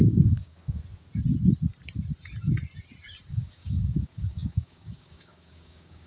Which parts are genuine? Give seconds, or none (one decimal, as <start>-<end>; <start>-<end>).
0.8-3.3